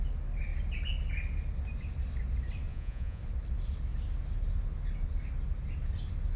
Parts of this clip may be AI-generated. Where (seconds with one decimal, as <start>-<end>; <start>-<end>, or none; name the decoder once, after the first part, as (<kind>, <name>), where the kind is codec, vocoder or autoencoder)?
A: 2.7-3.2 (vocoder, Vocos)